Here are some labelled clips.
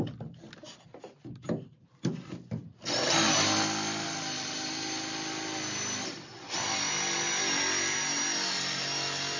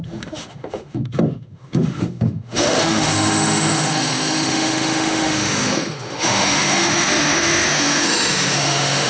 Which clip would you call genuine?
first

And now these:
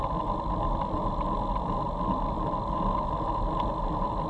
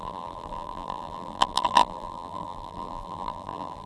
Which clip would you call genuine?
first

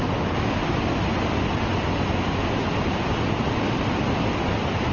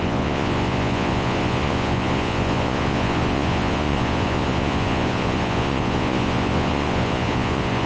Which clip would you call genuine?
first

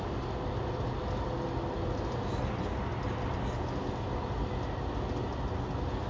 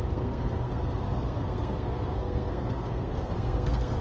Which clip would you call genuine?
first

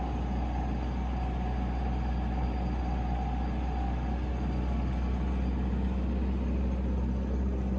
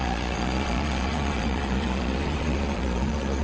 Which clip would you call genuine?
first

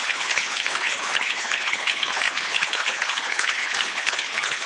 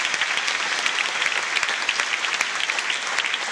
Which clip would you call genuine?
second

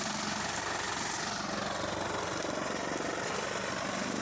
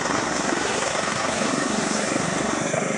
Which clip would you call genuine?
first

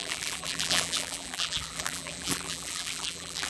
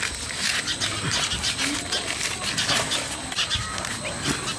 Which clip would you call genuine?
second